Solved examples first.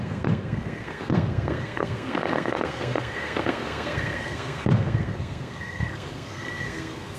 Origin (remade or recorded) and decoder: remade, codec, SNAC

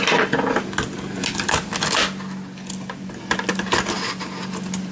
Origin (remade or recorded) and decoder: recorded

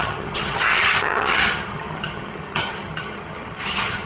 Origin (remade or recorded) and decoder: remade, vocoder, HiFi-GAN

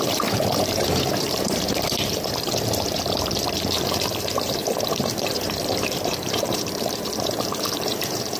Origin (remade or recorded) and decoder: remade, vocoder, BigVGAN v2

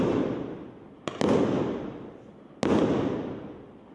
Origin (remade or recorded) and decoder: recorded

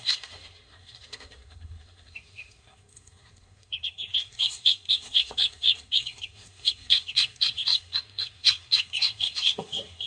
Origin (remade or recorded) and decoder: remade, codec, SNAC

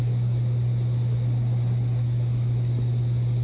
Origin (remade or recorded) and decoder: recorded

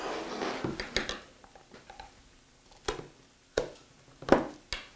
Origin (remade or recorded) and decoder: recorded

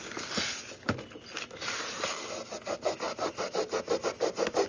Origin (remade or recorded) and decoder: recorded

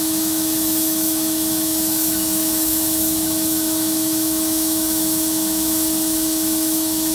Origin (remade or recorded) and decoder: remade, autoencoder, DAC-VAE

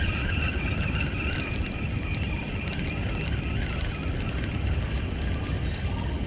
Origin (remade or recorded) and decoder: recorded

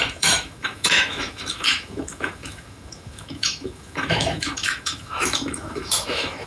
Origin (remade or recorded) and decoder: remade, autoencoder, DAC-VAE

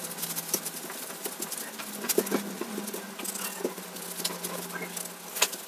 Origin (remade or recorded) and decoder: recorded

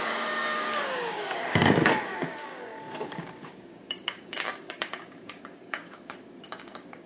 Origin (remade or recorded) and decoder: remade, codec, DAC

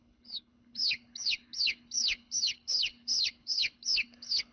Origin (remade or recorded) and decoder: remade, codec, HILCodec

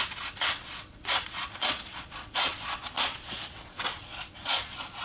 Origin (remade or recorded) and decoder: remade, vocoder, Vocos